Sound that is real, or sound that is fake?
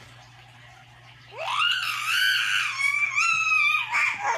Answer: real